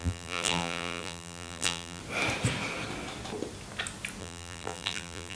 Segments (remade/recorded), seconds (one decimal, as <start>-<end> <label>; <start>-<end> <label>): 0.0-2.0 remade; 2.0-4.2 recorded; 4.2-5.3 remade